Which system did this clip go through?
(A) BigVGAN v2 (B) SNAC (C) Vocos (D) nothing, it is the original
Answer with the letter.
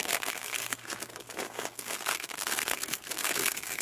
B